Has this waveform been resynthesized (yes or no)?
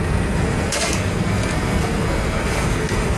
yes